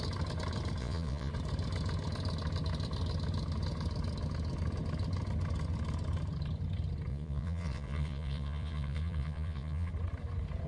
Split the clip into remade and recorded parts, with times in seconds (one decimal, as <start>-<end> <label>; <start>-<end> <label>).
0.0-0.8 recorded; 0.8-1.3 remade; 1.3-7.1 recorded; 7.1-9.9 remade; 9.9-10.7 recorded